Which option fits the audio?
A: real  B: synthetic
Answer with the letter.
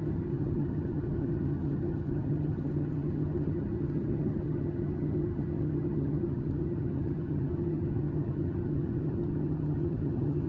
B